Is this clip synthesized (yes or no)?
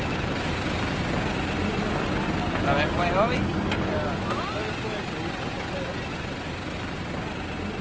no